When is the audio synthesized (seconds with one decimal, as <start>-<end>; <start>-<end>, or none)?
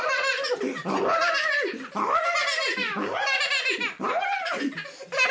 none